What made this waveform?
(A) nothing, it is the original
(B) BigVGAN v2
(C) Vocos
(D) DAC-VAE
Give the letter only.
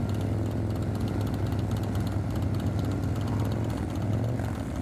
A